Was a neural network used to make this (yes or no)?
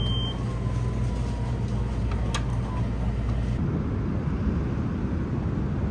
no